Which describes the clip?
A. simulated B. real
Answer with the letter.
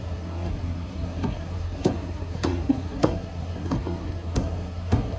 A